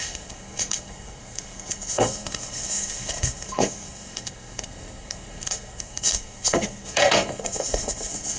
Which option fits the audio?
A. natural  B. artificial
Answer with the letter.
B